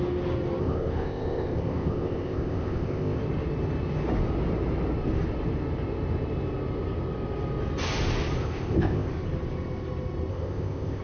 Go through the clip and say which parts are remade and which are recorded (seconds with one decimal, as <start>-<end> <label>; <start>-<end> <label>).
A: 0.0-0.6 recorded; 0.6-3.2 remade; 3.2-8.4 recorded; 8.4-9.1 remade; 9.1-10.3 recorded; 10.3-11.0 remade